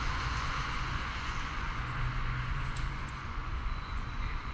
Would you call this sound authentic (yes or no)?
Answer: no